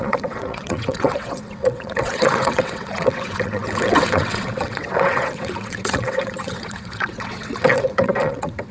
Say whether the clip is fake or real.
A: fake